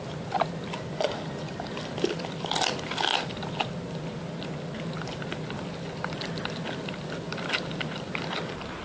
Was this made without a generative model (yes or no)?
yes